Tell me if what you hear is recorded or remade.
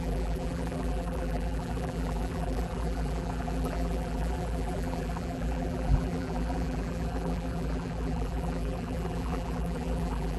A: remade